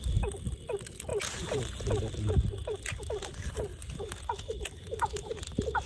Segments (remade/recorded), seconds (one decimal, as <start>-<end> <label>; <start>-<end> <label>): 0.0-5.9 recorded